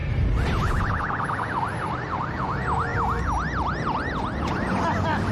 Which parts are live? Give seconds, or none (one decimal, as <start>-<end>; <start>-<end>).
0.6-2.9; 4.4-5.3